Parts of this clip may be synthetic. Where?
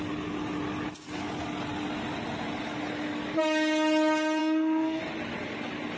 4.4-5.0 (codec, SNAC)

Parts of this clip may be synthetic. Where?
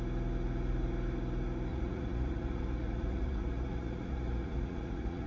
1.7-5.3 (vocoder, Vocos)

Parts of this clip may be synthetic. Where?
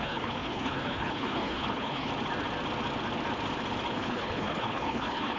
0.0-2.1 (codec, HILCodec); 3.9-5.4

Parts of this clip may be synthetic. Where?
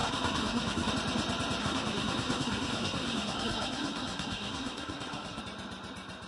0.0-0.9 (codec, SNAC); 1.6-5.4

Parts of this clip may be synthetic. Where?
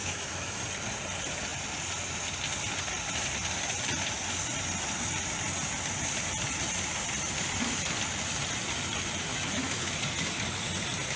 0.0-0.6 (autoencoder, DAC-VAE); 9.3-10.0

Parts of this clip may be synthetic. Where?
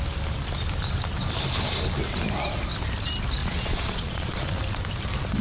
3.4-4.6 (vocoder, Vocos)